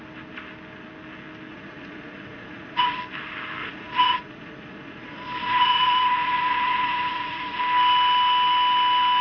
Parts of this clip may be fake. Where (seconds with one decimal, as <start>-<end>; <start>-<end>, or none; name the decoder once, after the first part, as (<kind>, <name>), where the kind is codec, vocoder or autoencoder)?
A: 1.5-3.0 (vocoder, Vocos); 3.6-7.6